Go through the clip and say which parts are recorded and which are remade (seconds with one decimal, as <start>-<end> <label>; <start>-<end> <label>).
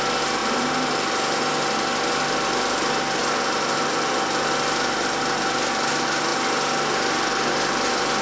0.0-0.4 recorded; 0.4-1.4 remade; 1.4-8.2 recorded